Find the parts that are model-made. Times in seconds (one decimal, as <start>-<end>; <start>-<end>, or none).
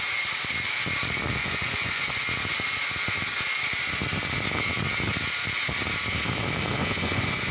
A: 1.4-2.2; 6.8-7.5